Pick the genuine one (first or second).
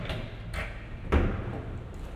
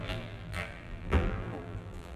first